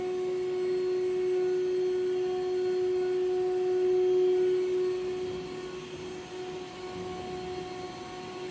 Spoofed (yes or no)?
no